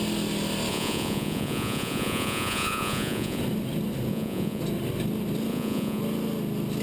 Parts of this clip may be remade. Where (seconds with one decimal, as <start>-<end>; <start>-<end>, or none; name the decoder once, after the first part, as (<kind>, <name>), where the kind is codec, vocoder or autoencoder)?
0.7-3.4 (vocoder, Vocos); 4.1-4.6; 5.5-6.0